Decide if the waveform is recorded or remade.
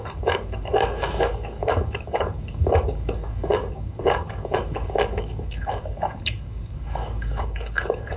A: remade